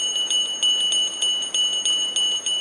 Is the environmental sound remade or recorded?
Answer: recorded